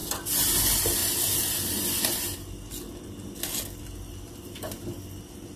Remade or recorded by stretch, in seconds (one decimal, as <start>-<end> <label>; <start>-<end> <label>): 0.0-5.6 recorded